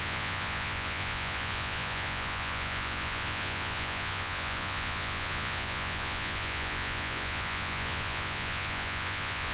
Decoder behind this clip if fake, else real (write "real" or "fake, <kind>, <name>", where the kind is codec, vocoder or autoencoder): fake, vocoder, Vocos